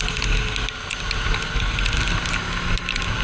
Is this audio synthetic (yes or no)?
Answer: no